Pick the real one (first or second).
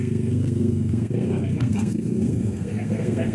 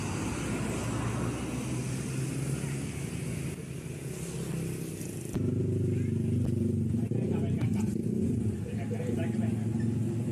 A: second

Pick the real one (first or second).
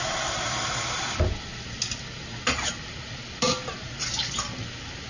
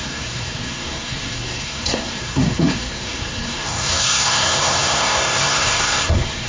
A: first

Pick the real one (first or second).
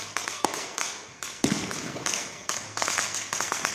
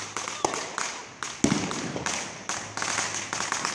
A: second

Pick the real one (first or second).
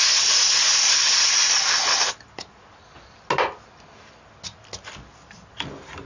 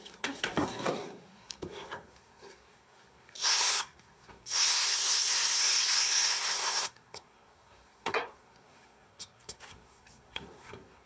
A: first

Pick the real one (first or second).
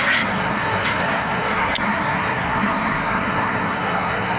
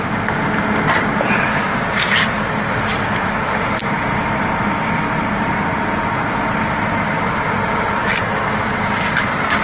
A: second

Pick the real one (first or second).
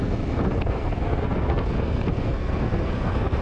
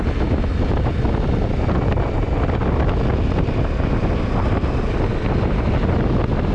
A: second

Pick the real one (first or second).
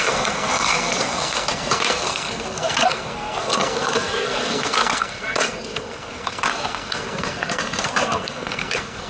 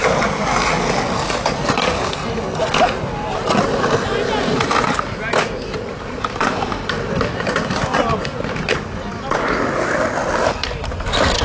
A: second